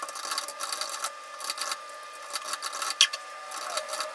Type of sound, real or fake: real